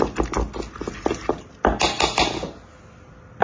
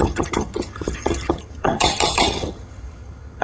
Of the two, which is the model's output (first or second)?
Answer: second